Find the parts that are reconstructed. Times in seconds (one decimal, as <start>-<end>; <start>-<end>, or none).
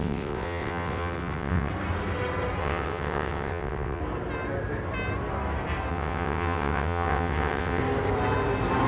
0.0-1.7; 2.6-4.0; 5.9-7.8